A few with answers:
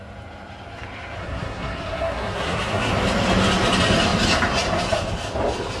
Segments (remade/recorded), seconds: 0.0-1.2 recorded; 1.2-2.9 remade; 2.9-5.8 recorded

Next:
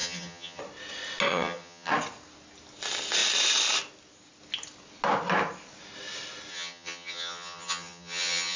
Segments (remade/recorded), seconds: 0.0-0.6 remade; 0.6-1.3 recorded; 1.3-1.9 remade; 1.9-6.5 recorded; 6.5-8.6 remade